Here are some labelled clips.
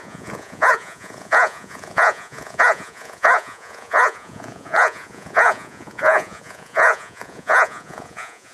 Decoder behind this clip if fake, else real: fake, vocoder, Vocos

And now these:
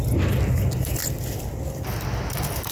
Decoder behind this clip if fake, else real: real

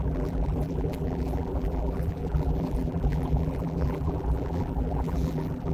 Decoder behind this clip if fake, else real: fake, vocoder, BigVGAN v2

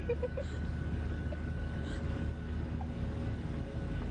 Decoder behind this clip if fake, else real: fake, codec, DAC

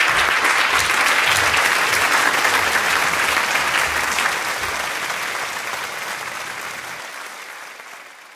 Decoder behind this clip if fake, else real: real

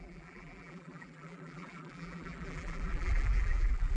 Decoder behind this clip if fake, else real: fake, vocoder, BigVGAN v2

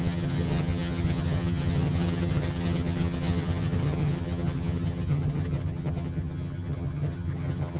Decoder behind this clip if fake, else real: fake, vocoder, HiFi-GAN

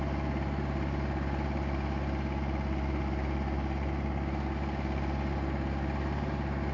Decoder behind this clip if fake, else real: real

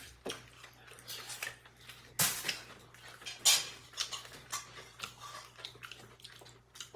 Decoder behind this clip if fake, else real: real